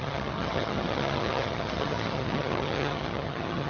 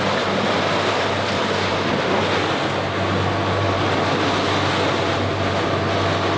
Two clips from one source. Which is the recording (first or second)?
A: second